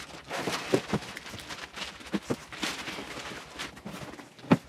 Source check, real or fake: real